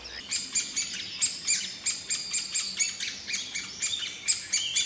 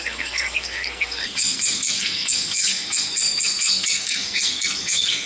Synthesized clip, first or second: second